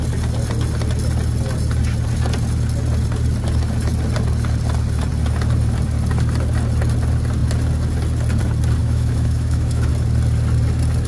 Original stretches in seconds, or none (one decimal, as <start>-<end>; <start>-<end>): 0.0-8.8; 9.9-11.1